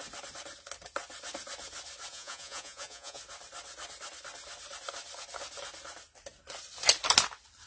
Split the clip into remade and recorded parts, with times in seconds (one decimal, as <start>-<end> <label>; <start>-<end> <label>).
0.0-2.1 recorded; 2.1-3.2 remade; 3.2-7.7 recorded